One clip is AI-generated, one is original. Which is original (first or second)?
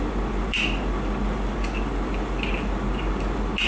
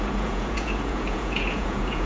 first